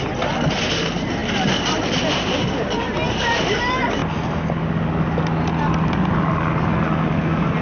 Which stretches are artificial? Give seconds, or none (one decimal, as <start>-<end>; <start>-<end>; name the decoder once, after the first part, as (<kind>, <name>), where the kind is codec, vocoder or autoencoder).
none